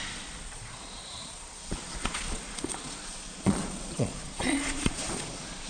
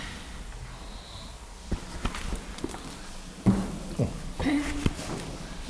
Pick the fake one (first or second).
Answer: first